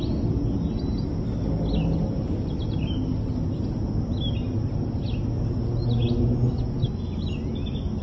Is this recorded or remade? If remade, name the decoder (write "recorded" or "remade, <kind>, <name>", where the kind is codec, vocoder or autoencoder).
recorded